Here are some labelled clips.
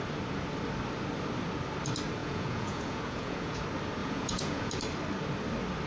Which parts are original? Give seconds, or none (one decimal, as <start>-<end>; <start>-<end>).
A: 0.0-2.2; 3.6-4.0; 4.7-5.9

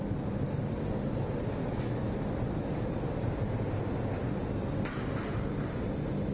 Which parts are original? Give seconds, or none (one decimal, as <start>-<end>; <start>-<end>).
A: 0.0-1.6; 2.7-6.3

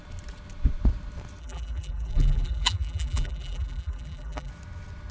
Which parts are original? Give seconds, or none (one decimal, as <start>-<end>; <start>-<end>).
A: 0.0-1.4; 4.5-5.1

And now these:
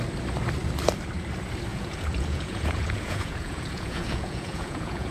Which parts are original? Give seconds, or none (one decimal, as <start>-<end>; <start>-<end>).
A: 0.0-1.7

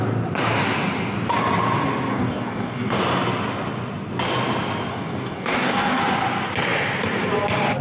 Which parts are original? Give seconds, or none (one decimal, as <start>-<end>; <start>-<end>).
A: 0.0-2.1; 3.0-4.9; 6.0-7.8